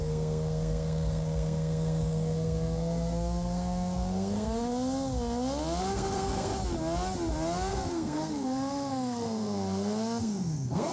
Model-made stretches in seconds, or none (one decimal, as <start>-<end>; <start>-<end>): 0.0-4.7; 5.8-6.5; 7.7-10.9